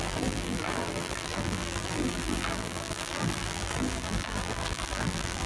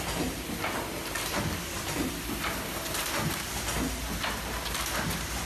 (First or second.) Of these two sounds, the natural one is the second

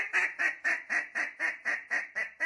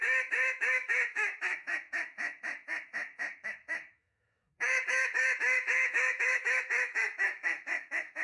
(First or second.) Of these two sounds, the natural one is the first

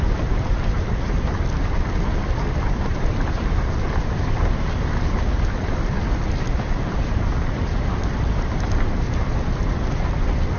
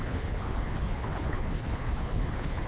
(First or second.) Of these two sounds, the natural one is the first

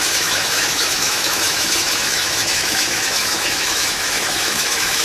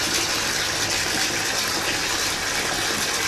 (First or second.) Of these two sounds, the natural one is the second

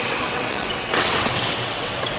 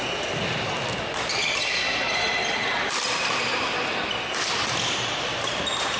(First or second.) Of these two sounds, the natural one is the second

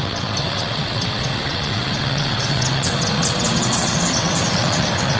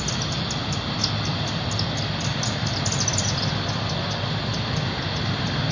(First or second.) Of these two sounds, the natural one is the second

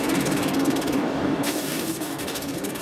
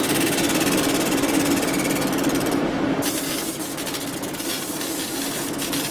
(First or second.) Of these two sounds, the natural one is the second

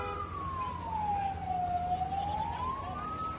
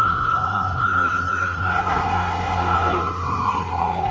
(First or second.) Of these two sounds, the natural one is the first